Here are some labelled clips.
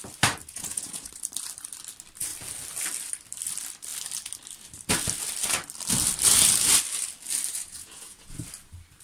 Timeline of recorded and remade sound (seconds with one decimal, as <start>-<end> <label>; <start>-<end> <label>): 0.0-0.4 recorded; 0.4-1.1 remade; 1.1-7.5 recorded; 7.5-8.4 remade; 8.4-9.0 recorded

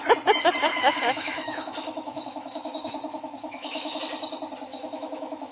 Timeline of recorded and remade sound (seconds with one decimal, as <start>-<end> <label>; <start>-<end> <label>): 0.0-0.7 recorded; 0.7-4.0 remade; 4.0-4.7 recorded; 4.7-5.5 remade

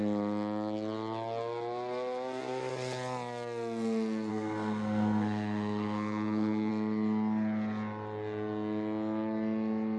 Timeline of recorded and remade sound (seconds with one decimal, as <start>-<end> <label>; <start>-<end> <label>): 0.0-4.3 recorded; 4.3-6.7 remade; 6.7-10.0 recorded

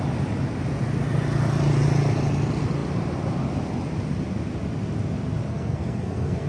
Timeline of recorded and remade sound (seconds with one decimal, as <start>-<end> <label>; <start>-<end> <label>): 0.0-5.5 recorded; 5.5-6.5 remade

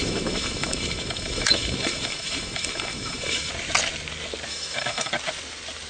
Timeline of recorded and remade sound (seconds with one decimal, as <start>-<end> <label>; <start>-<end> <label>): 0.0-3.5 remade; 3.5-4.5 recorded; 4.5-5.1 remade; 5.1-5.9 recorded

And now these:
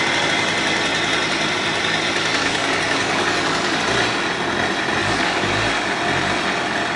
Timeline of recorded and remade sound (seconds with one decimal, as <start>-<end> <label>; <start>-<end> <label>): 0.0-2.4 recorded; 2.4-3.8 remade; 3.8-5.0 recorded; 5.0-5.5 remade; 5.5-7.0 recorded

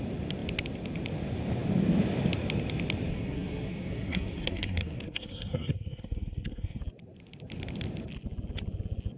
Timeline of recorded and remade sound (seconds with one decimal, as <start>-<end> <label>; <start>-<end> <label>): 0.0-3.1 recorded; 3.1-6.8 remade; 6.8-9.2 recorded

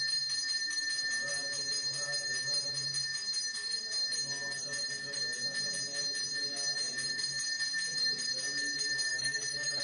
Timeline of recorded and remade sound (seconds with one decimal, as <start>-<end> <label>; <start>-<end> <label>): 0.0-9.1 recorded; 9.1-9.8 remade